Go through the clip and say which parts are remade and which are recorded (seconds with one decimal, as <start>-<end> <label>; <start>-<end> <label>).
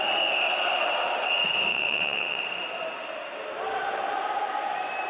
0.0-1.7 recorded; 1.7-2.4 remade; 2.4-5.1 recorded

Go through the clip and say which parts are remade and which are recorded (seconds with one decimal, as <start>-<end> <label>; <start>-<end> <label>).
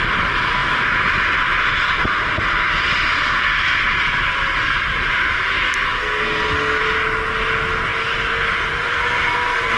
0.0-6.0 recorded; 6.0-6.8 remade; 6.8-8.9 recorded; 8.9-9.8 remade